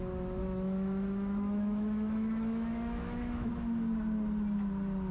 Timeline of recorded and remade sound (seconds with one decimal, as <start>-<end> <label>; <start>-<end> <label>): 0.0-0.4 recorded; 0.4-3.5 remade; 3.5-5.1 recorded